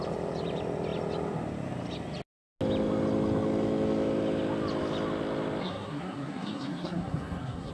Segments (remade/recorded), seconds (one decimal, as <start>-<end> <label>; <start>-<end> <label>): 0.0-5.6 recorded; 5.6-7.7 remade